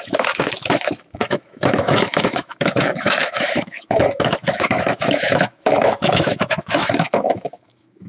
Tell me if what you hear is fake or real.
fake